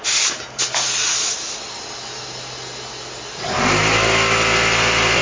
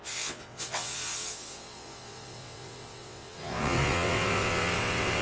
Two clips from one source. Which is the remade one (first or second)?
second